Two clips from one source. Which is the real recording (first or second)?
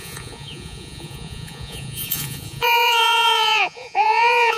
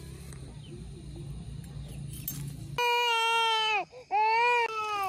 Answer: second